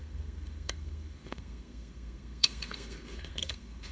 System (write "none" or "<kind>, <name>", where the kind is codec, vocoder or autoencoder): codec, SNAC